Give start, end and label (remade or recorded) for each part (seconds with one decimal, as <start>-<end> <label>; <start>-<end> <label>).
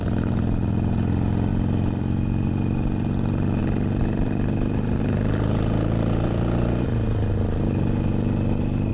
0.0-8.9 recorded